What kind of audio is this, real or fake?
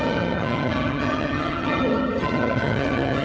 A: fake